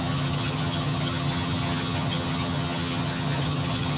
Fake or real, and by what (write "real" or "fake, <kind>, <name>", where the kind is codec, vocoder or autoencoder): fake, vocoder, HiFi-GAN